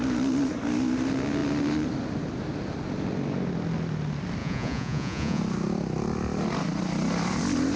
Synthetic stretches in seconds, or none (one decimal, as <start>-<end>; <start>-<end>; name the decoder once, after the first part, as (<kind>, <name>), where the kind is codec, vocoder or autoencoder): 4.4-5.4 (vocoder, Vocos)